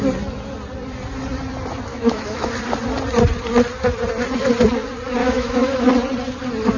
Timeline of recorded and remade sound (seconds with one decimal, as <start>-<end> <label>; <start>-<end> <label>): 0.0-1.9 recorded; 1.9-2.5 remade; 2.5-5.2 recorded; 5.2-5.9 remade; 5.9-6.8 recorded